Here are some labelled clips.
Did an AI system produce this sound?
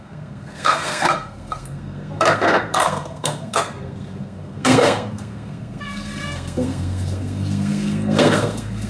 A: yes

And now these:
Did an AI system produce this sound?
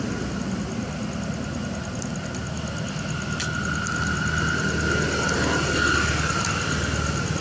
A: no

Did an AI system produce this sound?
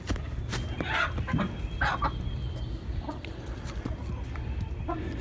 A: no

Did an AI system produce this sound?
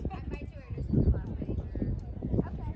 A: no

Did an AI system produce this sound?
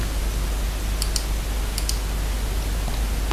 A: no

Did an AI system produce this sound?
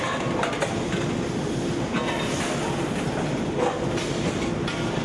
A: no